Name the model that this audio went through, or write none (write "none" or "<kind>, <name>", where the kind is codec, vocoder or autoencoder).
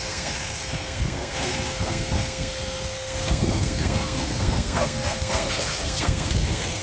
codec, SNAC